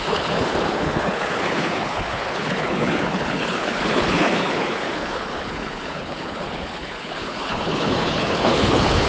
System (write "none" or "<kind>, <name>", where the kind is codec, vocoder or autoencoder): codec, HILCodec